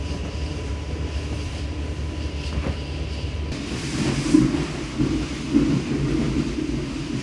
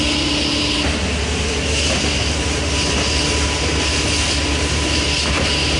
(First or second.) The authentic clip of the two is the second